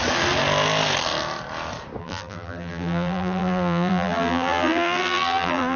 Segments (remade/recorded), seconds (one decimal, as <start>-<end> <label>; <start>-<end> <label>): 0.0-2.0 recorded; 2.0-5.8 remade